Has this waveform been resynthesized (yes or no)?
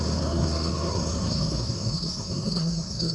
yes